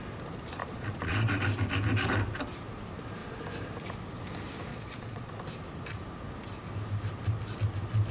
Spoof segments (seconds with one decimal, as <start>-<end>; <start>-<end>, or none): 0.6-1.4; 4.7-5.3